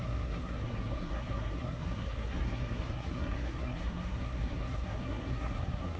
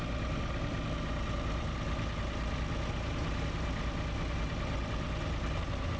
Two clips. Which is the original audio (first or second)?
second